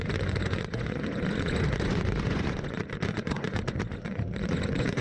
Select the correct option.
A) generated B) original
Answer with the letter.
A